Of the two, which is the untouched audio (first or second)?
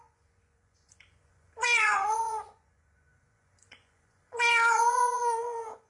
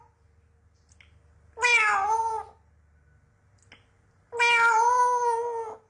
second